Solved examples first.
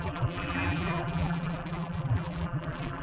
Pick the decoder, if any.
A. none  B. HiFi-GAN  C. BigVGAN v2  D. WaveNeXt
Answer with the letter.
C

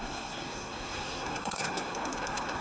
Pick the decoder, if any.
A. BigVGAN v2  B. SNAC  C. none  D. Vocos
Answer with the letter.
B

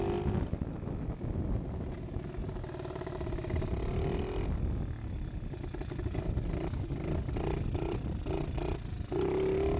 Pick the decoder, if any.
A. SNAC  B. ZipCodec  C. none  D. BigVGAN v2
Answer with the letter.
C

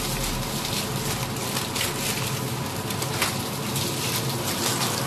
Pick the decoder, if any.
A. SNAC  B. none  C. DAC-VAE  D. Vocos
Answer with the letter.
B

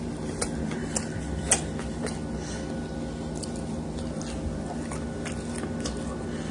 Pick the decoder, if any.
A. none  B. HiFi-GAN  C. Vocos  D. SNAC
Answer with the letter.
A